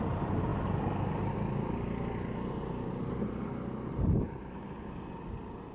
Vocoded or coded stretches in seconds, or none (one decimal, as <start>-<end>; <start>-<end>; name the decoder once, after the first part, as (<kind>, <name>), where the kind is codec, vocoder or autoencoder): none